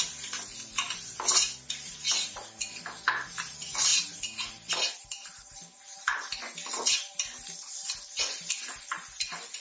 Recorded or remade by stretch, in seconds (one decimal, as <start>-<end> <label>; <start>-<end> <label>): 0.0-9.6 recorded